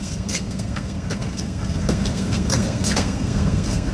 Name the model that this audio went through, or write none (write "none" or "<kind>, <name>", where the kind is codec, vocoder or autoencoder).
codec, SNAC